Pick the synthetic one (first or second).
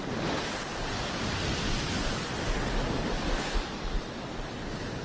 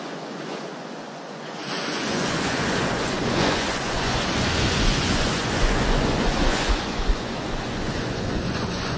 second